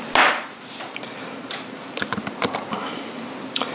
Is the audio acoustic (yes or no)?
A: yes